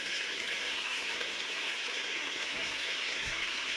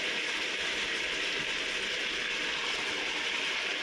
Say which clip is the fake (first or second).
first